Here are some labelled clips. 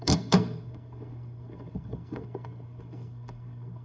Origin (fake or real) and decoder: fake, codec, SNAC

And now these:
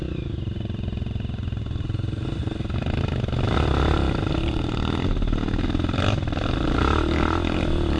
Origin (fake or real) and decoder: real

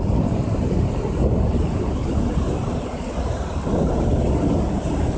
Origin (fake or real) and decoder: real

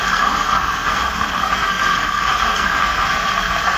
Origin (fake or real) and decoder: fake, codec, SNAC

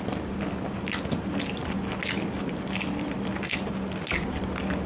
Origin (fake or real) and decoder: real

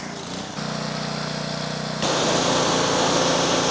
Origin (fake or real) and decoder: real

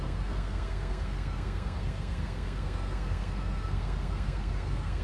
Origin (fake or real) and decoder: fake, codec, SNAC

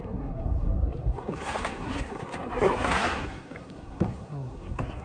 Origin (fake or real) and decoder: fake, codec, SNAC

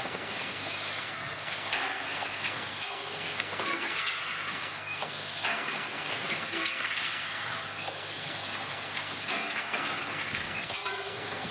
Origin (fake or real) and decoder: fake, codec, SNAC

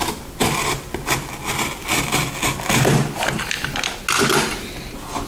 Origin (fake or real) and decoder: real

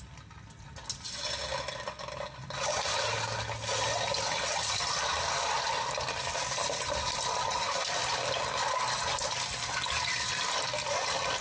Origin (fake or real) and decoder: real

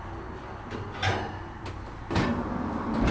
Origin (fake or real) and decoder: real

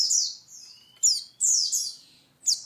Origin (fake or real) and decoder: real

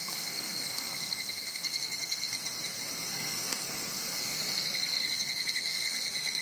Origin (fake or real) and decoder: fake, codec, SNAC